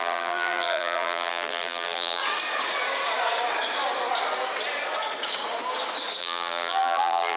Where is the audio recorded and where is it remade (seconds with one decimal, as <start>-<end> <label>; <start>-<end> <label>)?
0.0-2.2 remade; 2.2-6.2 recorded; 6.2-7.4 remade